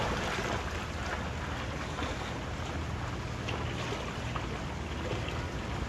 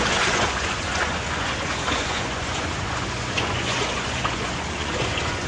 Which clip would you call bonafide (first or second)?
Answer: first